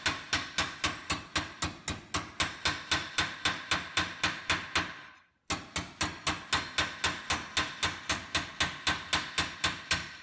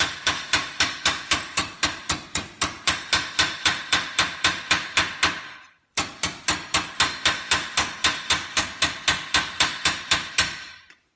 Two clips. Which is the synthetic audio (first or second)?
second